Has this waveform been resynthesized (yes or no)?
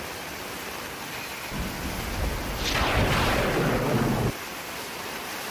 no